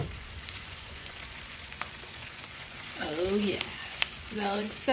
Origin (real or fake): fake